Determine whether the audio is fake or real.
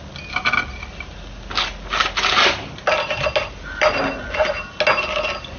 real